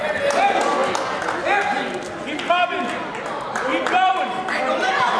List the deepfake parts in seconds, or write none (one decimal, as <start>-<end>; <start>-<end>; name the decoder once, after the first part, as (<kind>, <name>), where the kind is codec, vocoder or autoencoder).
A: none